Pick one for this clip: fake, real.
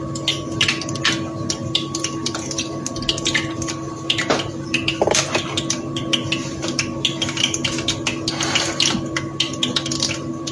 real